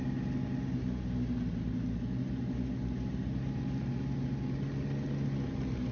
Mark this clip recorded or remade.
recorded